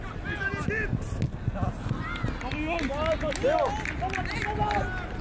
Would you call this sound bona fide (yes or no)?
yes